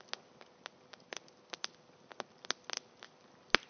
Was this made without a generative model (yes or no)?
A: yes